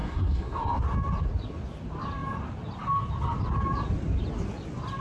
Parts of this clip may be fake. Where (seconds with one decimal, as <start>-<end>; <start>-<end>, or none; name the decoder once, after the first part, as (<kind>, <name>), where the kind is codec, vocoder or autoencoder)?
0.0-0.8 (codec, SNAC)